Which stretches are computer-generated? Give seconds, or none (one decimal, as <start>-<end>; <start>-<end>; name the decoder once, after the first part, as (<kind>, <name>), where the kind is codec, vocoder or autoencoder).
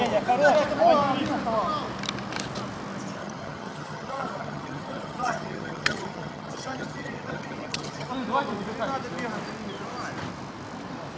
3.2-8.1 (vocoder, HiFi-GAN)